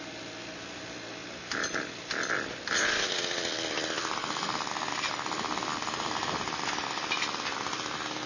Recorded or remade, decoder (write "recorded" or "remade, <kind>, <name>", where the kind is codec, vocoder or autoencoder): recorded